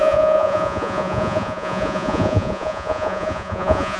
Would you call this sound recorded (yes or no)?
no